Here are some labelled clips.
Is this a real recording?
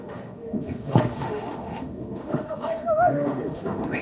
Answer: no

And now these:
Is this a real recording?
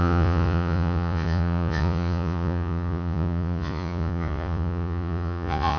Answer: no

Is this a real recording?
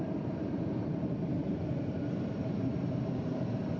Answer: no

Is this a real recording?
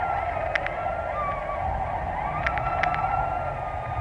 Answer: yes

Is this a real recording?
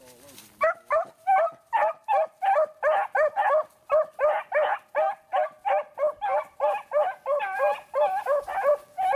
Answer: yes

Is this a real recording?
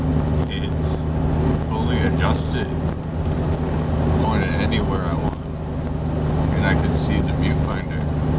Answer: yes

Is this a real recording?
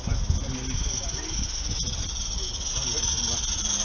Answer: yes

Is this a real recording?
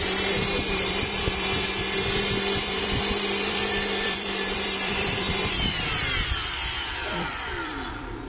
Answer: no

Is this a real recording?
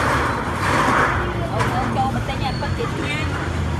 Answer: yes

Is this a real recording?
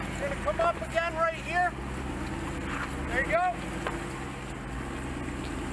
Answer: yes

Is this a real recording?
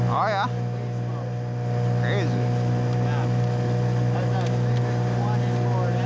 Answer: yes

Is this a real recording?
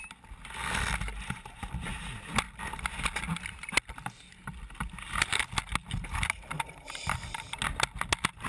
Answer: yes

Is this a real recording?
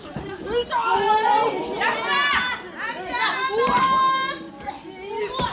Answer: yes